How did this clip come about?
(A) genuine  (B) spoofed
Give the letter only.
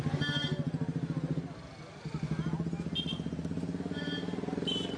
A